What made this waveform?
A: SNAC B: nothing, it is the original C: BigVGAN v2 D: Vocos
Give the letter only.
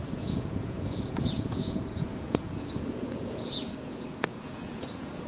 D